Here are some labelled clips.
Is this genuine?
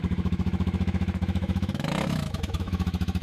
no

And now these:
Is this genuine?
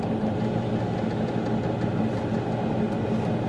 yes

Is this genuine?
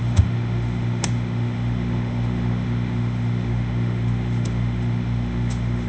no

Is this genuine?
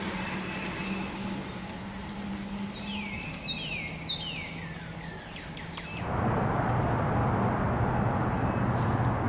yes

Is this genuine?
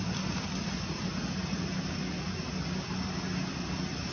yes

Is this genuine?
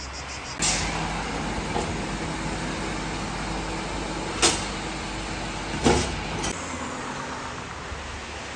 yes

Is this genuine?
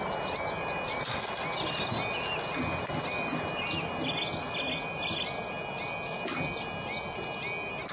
yes